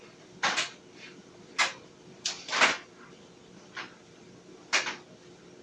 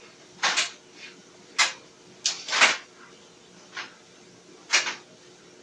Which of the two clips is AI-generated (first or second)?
first